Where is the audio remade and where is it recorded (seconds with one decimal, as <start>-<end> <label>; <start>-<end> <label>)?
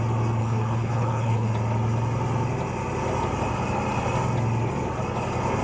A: 0.0-0.4 recorded; 0.4-1.5 remade; 1.5-5.6 recorded